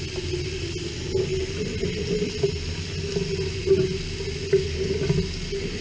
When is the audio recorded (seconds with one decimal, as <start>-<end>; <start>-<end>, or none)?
0.0-5.8